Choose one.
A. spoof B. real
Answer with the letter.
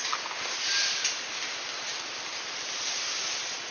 B